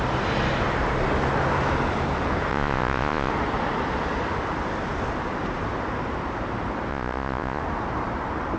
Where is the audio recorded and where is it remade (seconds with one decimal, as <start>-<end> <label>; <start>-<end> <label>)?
0.0-2.5 recorded; 2.5-3.3 remade; 3.3-6.9 recorded; 6.9-7.6 remade; 7.6-8.6 recorded